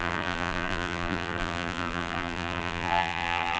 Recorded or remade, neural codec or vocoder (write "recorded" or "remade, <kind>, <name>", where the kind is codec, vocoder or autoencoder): remade, vocoder, BigVGAN v2